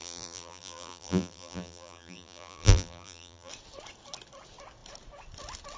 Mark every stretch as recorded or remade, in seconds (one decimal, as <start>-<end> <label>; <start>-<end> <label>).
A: 0.0-3.5 remade; 3.5-5.8 recorded